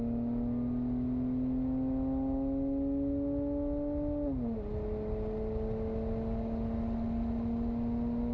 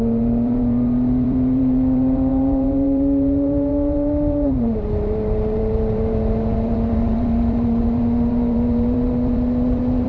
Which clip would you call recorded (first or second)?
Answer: first